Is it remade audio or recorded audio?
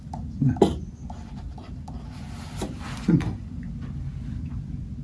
recorded